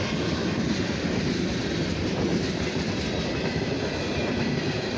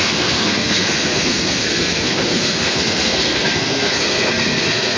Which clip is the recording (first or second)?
first